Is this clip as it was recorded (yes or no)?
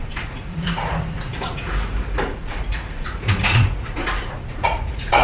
no